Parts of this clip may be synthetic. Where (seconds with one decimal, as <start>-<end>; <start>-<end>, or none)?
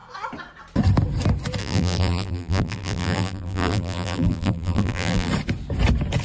1.6-5.3